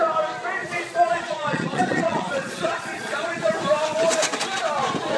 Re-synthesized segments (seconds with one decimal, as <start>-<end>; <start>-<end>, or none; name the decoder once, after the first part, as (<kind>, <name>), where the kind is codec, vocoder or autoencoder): 0.6-3.5 (vocoder, Vocos)